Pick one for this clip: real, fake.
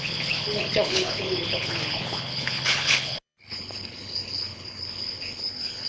fake